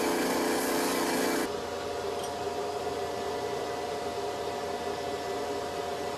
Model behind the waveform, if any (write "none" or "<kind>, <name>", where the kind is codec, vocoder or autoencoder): none